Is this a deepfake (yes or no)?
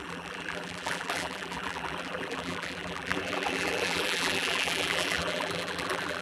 yes